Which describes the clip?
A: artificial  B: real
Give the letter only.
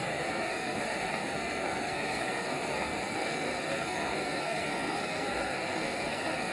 A